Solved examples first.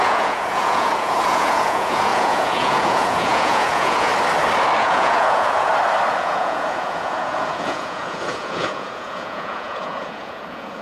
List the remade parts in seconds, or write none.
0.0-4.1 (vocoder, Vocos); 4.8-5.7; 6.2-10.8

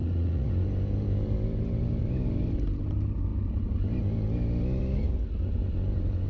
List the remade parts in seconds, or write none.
0.0-0.5 (vocoder, Vocos)

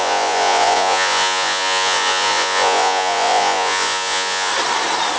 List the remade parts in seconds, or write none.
0.0-4.5 (vocoder, Vocos)

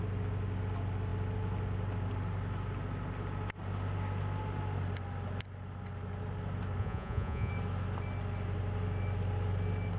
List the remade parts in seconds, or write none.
6.8-7.5 (vocoder, Vocos)

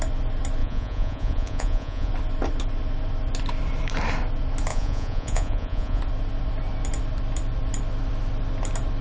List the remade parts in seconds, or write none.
0.6-2.1 (vocoder, Vocos); 4.7-6.0